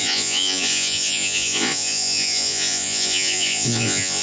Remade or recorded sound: remade